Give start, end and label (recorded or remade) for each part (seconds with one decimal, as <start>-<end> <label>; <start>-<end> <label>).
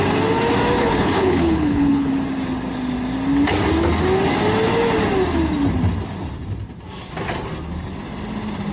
0.0-0.8 recorded; 0.8-2.1 remade; 2.1-8.7 recorded